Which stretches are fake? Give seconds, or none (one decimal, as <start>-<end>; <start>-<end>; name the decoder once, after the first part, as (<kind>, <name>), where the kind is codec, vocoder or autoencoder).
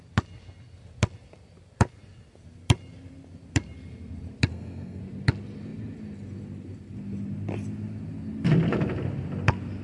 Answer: 4.5-5.0 (codec, SNAC)